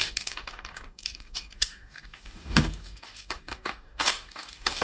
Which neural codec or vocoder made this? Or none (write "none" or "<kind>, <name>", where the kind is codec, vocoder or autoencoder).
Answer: codec, DAC